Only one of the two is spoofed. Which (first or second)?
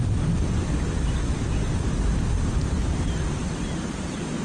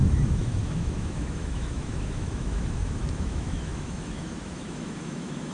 second